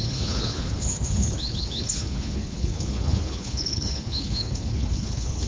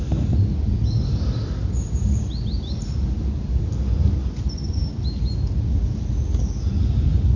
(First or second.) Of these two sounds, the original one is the second